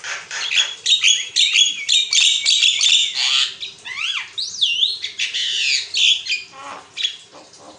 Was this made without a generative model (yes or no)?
yes